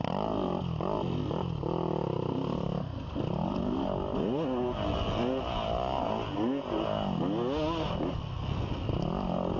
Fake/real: real